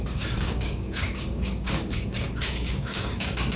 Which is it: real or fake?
fake